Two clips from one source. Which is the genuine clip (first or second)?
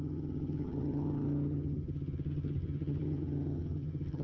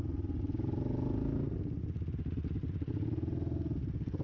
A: second